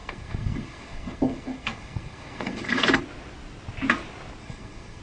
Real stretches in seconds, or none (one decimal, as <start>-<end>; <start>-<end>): 3.0-4.4